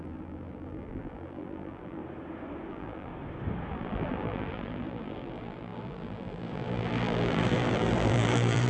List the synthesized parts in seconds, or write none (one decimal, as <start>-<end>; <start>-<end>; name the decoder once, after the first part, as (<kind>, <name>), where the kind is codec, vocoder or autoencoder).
0.0-2.0 (vocoder, BigVGAN v2); 2.7-3.1; 3.7-8.7